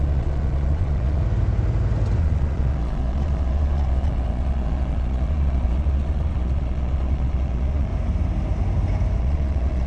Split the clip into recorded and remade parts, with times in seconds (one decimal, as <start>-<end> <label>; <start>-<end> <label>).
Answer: 0.0-1.2 remade; 1.2-2.2 recorded; 2.2-7.9 remade; 7.9-9.2 recorded; 9.2-9.9 remade